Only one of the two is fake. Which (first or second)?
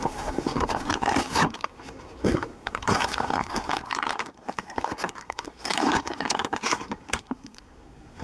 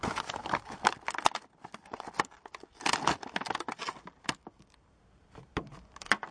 first